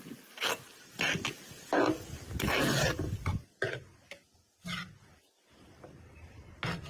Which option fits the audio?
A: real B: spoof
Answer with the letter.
A